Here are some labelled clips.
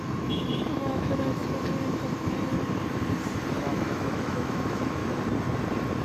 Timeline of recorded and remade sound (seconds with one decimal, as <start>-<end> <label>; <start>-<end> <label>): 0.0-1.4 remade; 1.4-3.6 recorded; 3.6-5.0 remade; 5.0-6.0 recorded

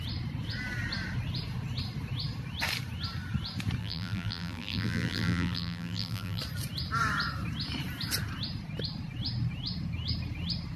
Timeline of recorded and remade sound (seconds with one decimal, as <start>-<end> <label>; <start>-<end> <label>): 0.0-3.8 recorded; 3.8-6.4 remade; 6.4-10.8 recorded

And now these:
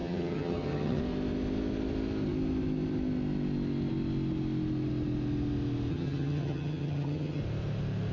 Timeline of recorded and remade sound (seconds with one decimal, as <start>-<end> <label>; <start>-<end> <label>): 0.0-1.0 remade; 1.0-5.9 recorded; 5.9-7.4 remade; 7.4-8.1 recorded